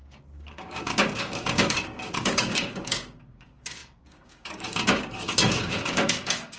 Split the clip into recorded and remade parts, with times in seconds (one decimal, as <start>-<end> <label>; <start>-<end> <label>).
0.0-6.6 remade